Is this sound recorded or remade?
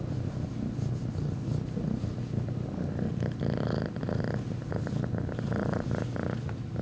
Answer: recorded